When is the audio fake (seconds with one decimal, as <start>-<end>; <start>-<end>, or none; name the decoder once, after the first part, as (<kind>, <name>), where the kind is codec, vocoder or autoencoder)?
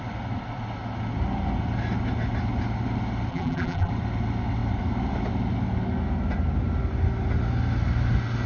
3.3-3.9 (vocoder, BigVGAN v2)